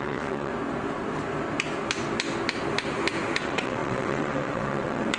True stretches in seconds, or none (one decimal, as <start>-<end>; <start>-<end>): 0.5-3.4